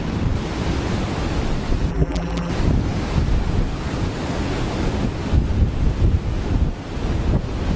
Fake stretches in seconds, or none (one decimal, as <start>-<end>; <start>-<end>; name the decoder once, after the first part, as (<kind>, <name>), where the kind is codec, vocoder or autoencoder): 1.9-2.5 (vocoder, BigVGAN v2)